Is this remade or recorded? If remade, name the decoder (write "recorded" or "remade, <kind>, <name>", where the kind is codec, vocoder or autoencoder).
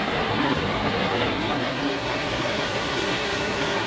remade, codec, SNAC